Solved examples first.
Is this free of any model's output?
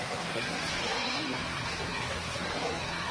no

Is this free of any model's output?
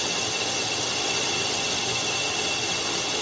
yes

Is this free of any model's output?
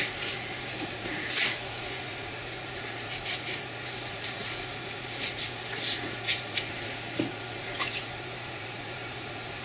no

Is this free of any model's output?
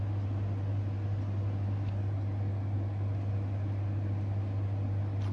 yes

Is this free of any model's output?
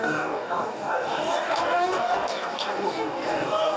no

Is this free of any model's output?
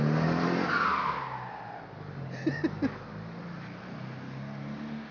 yes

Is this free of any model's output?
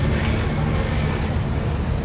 yes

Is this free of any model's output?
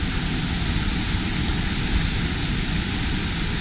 yes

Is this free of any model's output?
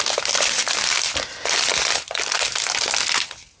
yes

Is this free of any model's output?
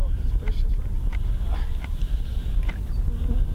yes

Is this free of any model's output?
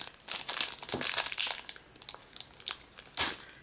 yes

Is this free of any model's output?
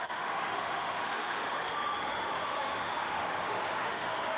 no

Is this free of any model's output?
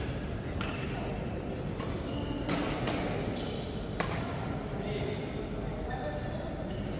yes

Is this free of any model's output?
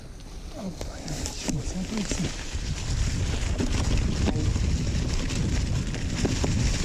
yes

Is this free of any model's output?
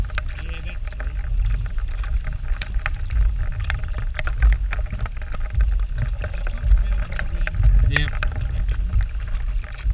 yes